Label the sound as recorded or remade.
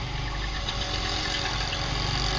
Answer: recorded